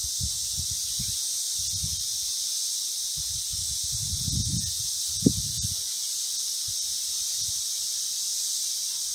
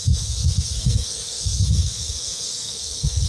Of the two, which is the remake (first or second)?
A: second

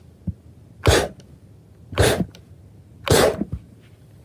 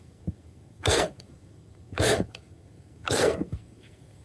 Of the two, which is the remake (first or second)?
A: second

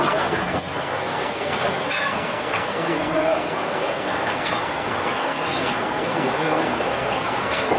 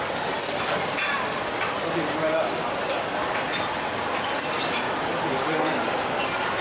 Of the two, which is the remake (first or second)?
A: first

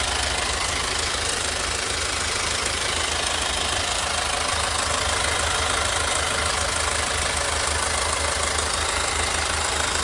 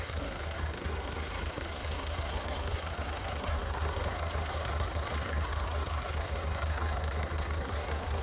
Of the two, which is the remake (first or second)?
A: second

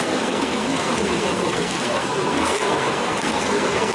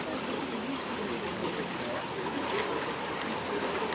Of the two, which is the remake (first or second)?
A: first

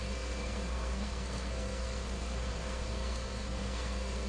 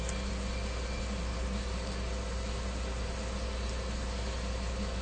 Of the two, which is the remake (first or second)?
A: first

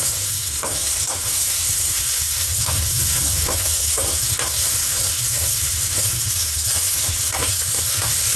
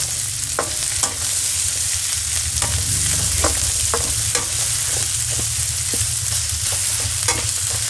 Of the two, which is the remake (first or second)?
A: first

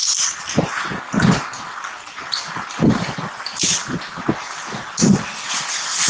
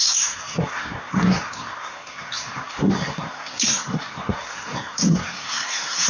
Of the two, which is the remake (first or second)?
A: second